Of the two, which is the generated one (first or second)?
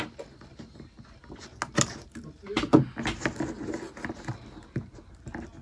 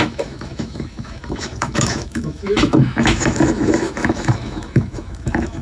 second